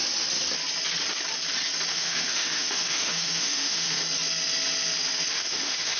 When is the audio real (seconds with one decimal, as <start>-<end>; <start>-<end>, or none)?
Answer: 0.0-1.9; 4.0-5.3